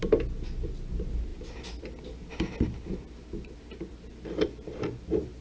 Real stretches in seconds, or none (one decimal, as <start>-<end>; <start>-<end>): 0.0-5.4